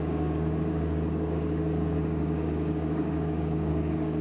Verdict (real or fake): fake